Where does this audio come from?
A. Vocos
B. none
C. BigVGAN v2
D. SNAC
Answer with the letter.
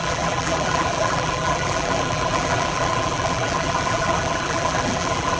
C